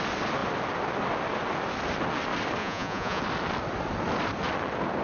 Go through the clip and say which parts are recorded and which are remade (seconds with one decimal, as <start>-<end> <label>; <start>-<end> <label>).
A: 0.0-2.6 recorded; 2.6-3.2 remade; 3.2-5.0 recorded